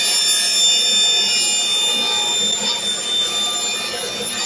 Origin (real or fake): real